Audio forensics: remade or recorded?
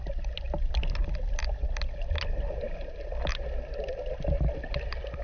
recorded